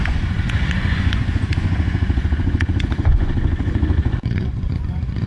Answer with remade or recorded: remade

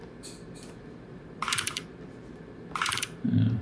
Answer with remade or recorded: remade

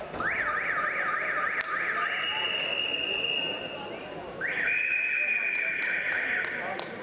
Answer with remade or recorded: recorded